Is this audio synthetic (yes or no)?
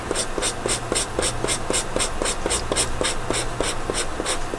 no